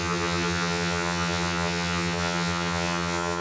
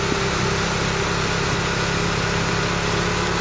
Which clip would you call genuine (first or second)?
second